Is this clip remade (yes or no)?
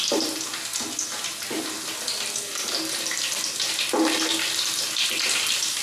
no